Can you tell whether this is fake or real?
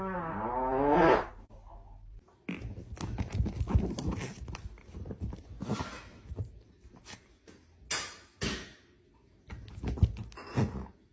real